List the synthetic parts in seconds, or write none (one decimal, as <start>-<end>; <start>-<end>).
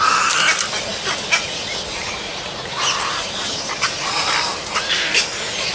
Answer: none